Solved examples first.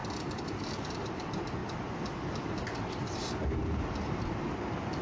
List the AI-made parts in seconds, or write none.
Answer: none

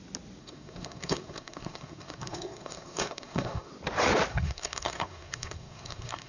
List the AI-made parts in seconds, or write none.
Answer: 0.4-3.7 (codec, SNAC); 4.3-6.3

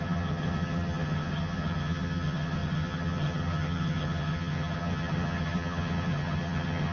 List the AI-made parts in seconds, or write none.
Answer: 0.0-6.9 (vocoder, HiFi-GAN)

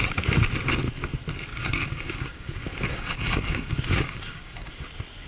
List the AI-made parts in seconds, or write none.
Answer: 1.5-4.7 (codec, DAC)

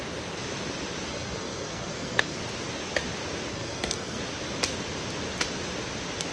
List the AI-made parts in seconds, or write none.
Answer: 1.1-2.4 (codec, SNAC); 3.5-4.2

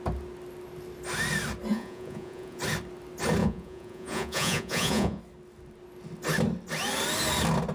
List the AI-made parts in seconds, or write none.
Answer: 1.7-2.6 (vocoder, Vocos); 3.4-5.2

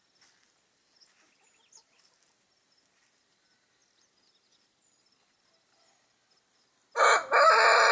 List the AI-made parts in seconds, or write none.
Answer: none